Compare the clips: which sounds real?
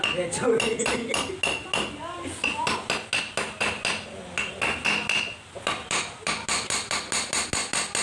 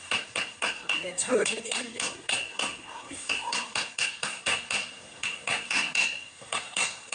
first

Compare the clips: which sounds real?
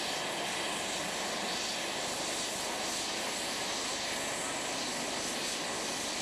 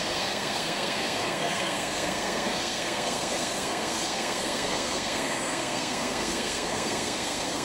first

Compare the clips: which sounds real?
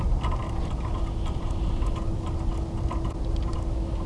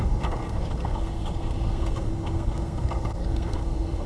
first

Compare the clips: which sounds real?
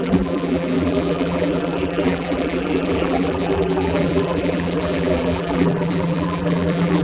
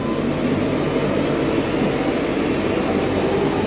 second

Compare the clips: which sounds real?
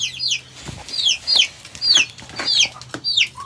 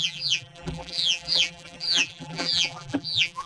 first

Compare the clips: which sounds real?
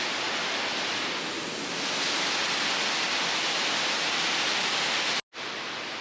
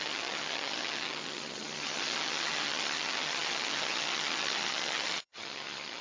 first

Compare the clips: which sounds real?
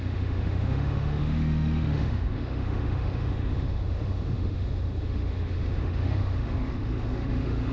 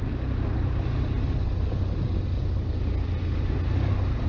second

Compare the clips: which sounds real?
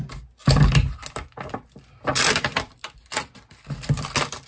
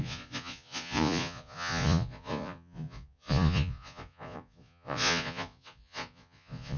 first